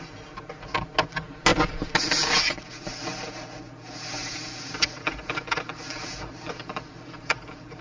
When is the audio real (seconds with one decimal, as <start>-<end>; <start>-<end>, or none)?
0.0-4.2